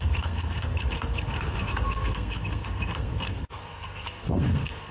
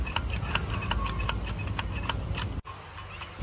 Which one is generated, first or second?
first